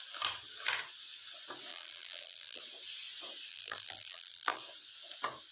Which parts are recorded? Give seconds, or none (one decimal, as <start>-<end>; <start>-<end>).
0.0-1.7; 2.6-3.5; 4.6-5.5